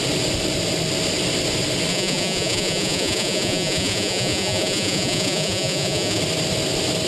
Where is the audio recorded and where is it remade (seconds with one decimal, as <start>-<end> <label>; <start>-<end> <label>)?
0.0-1.9 recorded; 1.9-6.2 remade; 6.2-7.1 recorded